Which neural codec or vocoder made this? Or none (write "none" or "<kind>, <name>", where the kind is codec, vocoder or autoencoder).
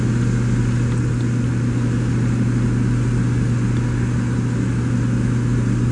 none